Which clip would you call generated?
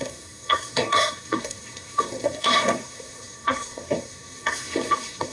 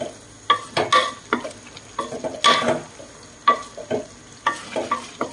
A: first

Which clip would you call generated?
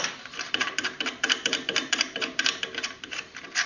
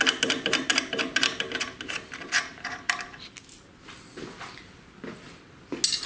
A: first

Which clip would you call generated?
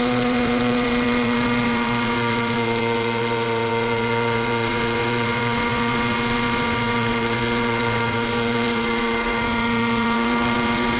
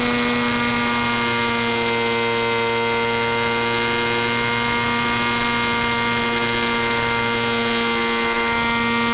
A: first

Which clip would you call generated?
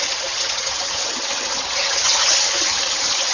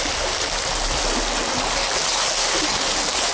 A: first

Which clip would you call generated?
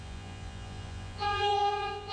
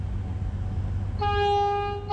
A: first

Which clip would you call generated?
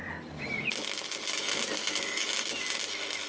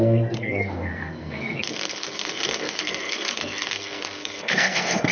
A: second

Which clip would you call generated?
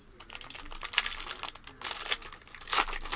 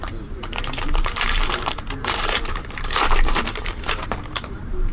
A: second